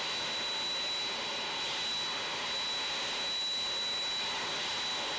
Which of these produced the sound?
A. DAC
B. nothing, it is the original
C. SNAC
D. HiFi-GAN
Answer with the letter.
B